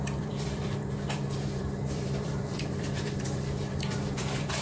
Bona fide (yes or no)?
no